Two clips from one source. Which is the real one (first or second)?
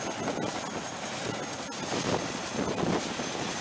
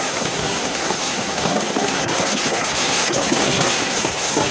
first